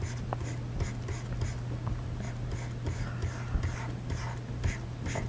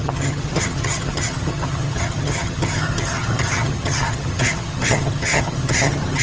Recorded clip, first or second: first